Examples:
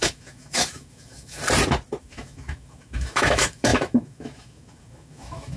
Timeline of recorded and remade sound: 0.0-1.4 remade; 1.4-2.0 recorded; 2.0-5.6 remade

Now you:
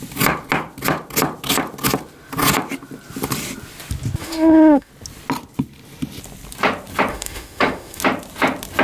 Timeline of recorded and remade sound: 0.0-4.2 recorded; 4.2-4.9 remade; 4.9-7.1 recorded; 7.1-8.0 remade; 8.0-8.8 recorded